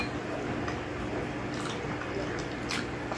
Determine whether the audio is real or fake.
real